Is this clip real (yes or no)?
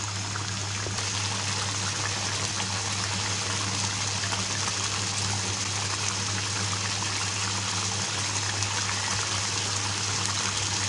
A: yes